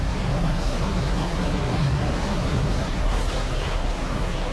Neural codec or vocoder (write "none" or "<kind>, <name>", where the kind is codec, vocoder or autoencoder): codec, SNAC